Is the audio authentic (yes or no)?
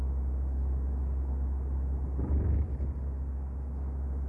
yes